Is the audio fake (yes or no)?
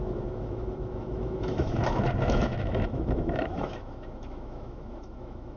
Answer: yes